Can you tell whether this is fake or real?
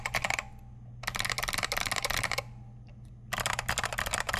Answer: real